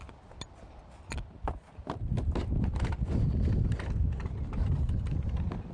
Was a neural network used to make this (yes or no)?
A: no